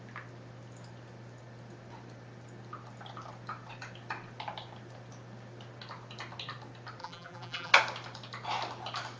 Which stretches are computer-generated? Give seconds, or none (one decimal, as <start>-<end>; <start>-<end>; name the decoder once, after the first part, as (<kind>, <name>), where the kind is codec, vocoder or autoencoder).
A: 7.0-7.7 (vocoder, BigVGAN v2)